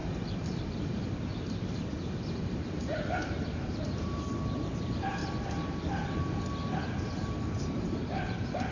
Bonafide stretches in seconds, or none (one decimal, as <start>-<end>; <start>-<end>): 5.2-7.8